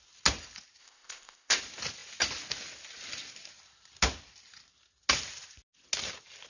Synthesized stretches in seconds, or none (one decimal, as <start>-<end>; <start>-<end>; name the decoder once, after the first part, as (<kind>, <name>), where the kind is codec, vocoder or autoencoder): 0.8-1.6 (codec, ZipCodec)